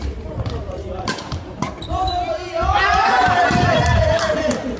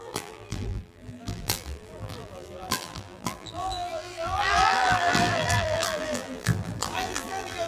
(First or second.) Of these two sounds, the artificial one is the second